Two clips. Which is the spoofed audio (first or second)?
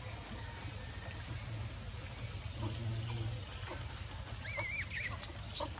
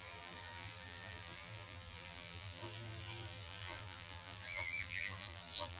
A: second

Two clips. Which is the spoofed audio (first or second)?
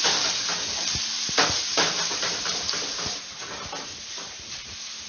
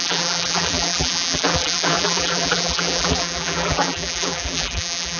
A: second